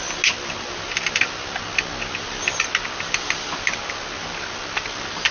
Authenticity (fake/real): real